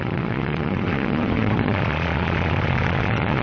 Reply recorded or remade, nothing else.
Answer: remade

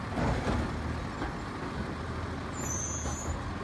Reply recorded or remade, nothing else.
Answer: recorded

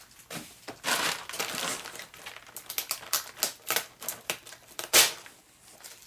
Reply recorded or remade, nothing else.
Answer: recorded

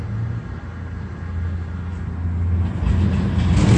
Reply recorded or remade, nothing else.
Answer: recorded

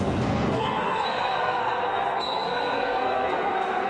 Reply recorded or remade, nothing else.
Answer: remade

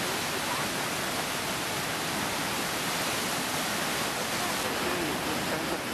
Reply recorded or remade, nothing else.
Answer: recorded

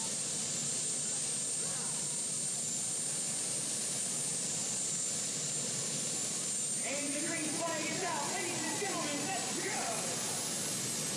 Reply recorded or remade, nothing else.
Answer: recorded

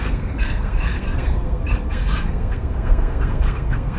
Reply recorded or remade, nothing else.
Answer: remade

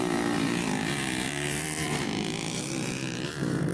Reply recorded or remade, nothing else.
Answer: remade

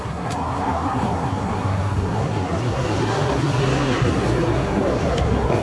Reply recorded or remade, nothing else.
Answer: remade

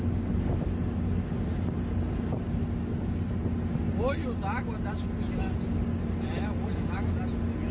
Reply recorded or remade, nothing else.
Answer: recorded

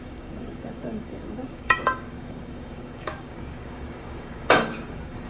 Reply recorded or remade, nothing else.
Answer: remade